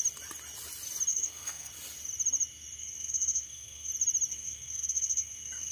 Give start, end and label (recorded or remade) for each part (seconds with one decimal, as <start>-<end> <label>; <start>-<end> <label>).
0.0-1.1 recorded; 1.1-1.7 remade; 1.7-2.8 recorded; 2.8-3.9 remade; 3.9-4.3 recorded; 4.3-5.7 remade